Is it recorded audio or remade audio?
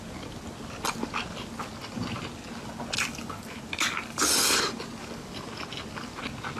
recorded